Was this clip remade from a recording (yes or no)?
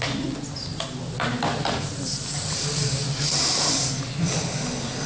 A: no